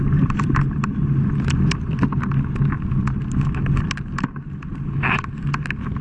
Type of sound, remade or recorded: recorded